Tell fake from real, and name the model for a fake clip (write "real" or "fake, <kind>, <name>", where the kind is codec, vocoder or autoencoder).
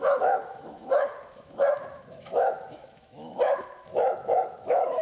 fake, autoencoder, DAC-VAE